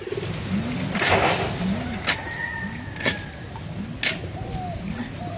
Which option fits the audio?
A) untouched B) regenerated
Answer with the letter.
A